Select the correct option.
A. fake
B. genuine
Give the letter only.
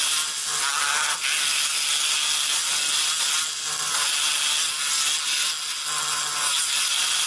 B